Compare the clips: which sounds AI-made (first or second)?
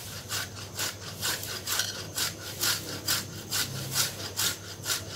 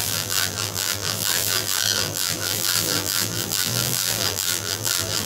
second